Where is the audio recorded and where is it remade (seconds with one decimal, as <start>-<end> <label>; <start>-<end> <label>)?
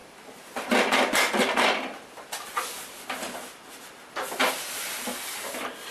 0.0-5.9 recorded